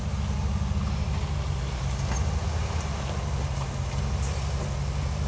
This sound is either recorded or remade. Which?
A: recorded